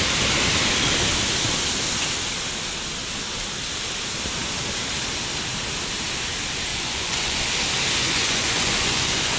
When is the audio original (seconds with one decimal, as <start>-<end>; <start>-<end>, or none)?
0.0-6.7; 7.4-8.0